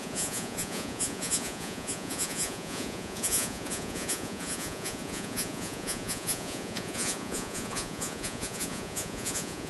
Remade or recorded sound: remade